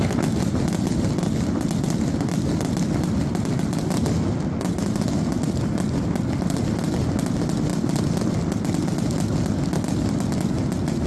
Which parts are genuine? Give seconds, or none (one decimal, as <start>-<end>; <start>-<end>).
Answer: 0.0-11.1